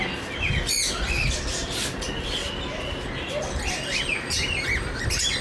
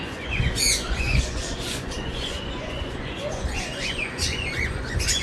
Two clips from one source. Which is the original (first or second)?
first